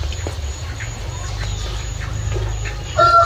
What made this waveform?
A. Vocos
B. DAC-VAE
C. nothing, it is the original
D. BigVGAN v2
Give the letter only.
C